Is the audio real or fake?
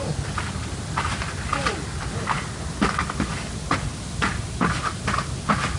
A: real